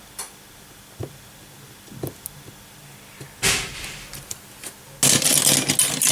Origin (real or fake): real